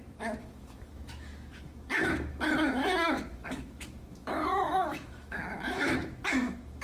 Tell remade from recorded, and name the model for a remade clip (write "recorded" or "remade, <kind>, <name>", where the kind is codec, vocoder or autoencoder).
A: remade, autoencoder, DAC-VAE